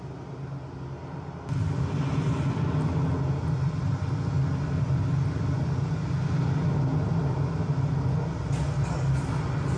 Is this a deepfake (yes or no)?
no